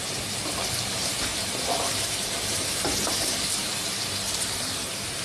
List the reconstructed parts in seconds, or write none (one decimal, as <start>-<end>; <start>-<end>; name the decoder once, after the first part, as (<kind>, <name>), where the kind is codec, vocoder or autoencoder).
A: 0.0-5.2 (vocoder, BigVGAN v2)